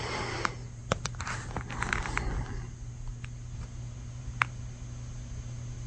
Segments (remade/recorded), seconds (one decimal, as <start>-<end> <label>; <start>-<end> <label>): 0.0-5.9 recorded